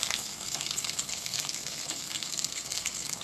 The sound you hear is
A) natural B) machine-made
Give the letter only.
B